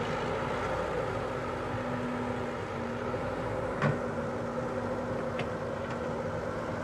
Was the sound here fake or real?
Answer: real